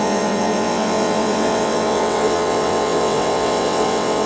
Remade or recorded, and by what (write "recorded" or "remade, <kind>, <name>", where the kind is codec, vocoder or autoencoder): remade, vocoder, WaveNeXt